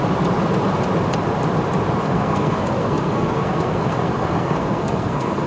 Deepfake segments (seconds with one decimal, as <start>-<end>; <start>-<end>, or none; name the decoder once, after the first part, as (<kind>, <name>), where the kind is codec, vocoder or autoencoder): 2.0-5.5 (codec, SNAC)